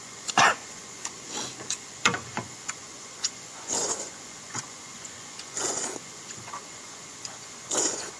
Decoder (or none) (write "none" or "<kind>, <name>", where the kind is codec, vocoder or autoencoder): vocoder, Vocos